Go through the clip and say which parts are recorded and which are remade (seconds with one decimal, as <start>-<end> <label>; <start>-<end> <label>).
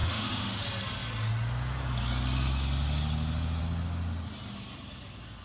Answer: 0.0-0.6 remade; 0.6-5.4 recorded